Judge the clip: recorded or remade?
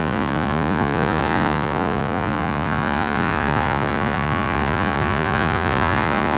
remade